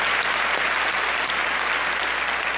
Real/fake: real